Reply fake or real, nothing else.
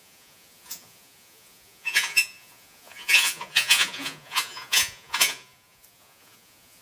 fake